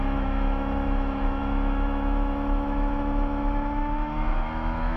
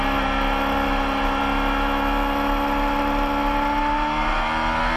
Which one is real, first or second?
second